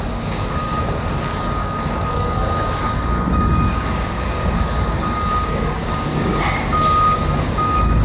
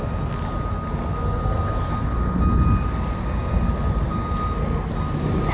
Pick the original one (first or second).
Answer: second